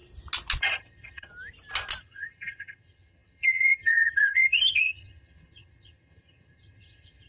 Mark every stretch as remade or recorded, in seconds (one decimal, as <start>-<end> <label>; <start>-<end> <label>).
0.0-0.6 recorded; 0.6-1.3 remade; 1.3-2.0 recorded; 2.0-7.3 remade